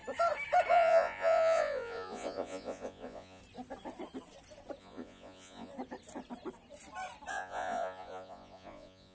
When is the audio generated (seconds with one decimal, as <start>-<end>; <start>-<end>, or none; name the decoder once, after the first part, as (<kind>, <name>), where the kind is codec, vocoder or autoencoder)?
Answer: 0.7-3.4 (vocoder, Vocos); 4.8-5.7; 7.3-9.1